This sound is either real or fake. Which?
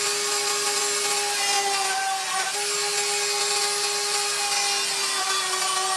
real